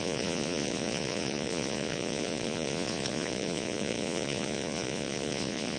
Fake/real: fake